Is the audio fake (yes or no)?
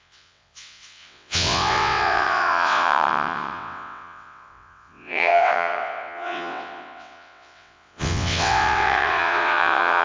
yes